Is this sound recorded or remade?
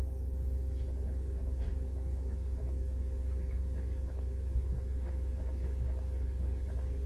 remade